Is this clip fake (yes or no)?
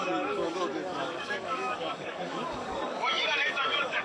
yes